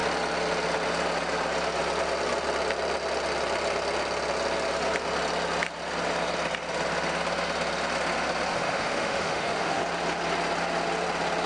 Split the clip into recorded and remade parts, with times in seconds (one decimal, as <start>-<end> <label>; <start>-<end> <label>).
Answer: 0.0-8.5 recorded; 8.5-9.8 remade; 9.8-11.5 recorded